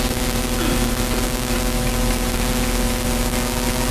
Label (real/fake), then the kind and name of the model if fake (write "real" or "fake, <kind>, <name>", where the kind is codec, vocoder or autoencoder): real